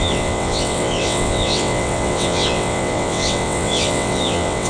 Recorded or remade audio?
remade